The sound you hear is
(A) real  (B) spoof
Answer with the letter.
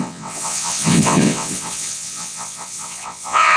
B